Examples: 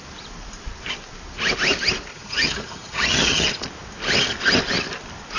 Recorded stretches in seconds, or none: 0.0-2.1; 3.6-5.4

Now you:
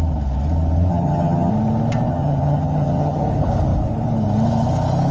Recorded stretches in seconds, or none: 0.0-0.9; 1.5-2.1; 3.2-5.1

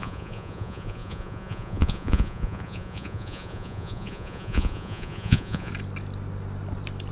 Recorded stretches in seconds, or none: 5.7-7.1

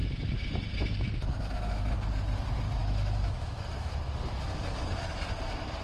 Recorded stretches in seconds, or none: 0.0-2.8; 4.0-5.8

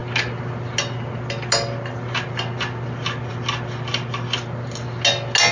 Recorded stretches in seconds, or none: 0.0-5.5

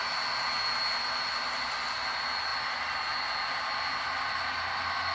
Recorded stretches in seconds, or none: 0.0-5.1

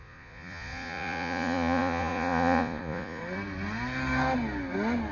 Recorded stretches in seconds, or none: 3.2-5.1